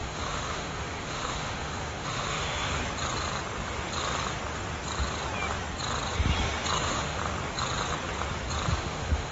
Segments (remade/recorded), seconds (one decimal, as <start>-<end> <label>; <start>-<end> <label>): 0.0-2.8 remade; 2.8-6.8 recorded; 6.8-7.2 remade; 7.2-8.8 recorded; 8.8-9.3 remade